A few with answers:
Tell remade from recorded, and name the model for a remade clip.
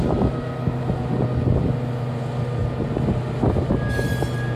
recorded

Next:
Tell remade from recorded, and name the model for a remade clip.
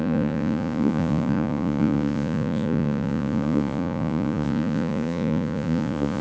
remade, vocoder, Vocos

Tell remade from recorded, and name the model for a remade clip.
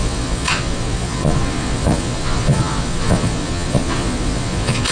remade, vocoder, Vocos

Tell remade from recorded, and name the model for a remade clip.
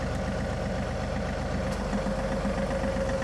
recorded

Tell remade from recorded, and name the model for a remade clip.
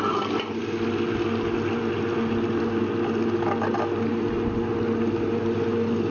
recorded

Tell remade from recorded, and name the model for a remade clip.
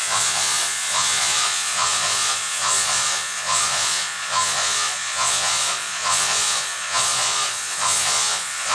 remade, vocoder, Vocos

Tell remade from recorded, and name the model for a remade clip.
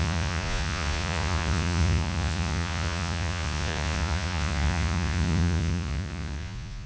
remade, vocoder, Vocos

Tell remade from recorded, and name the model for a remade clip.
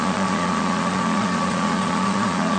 remade, vocoder, Vocos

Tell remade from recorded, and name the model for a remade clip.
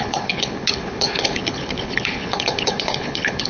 remade, codec, HILCodec